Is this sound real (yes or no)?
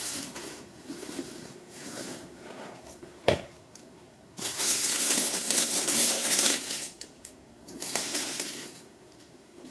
no